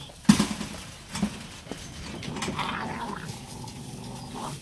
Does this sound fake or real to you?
real